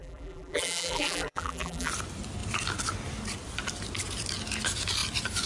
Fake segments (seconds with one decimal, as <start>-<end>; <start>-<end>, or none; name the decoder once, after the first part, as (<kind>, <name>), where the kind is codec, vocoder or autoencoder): 0.0-1.9 (vocoder, BigVGAN v2)